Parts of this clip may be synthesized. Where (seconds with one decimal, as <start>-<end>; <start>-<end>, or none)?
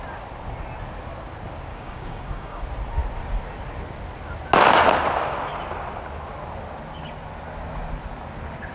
1.7-2.6